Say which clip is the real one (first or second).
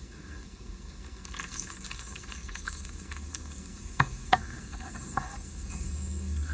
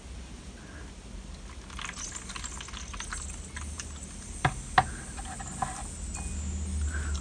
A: second